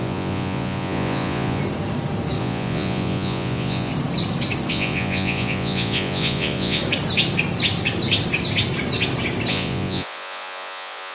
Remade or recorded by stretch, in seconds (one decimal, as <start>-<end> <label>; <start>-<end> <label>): 0.0-1.6 remade; 1.6-2.4 recorded; 2.4-3.9 remade; 3.9-4.7 recorded; 4.7-6.8 remade; 6.8-9.5 recorded; 9.5-11.1 remade